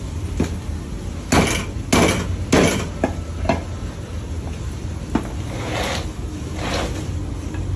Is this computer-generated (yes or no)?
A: no